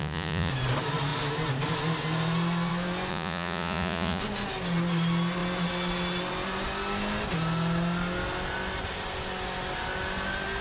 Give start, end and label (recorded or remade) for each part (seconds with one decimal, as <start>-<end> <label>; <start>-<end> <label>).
0.0-0.5 remade; 0.5-3.1 recorded; 3.1-4.2 remade; 4.2-10.6 recorded